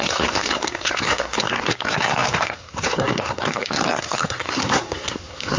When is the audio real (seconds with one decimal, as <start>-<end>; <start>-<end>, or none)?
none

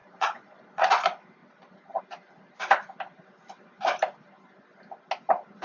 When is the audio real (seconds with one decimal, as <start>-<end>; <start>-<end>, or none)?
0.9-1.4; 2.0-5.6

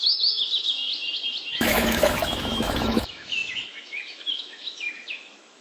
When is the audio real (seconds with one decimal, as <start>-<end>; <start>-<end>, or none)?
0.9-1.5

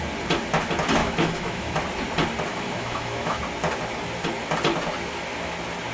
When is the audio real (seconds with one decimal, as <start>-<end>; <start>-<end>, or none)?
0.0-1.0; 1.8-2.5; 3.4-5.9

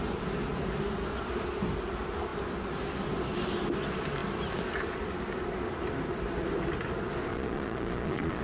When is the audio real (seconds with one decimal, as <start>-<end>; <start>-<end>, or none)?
0.0-7.3